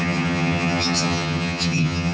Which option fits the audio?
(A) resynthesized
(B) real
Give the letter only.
A